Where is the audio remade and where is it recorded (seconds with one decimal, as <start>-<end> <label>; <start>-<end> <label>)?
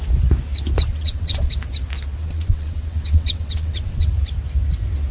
0.0-0.9 recorded; 0.9-1.5 remade; 1.5-2.2 recorded; 2.2-4.1 remade; 4.1-5.1 recorded